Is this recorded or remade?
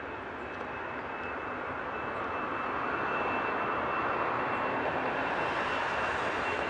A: recorded